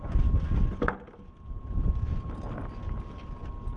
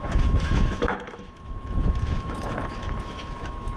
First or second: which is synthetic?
second